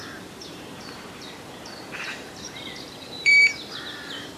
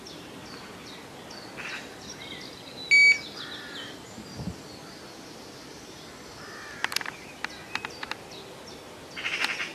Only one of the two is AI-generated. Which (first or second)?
first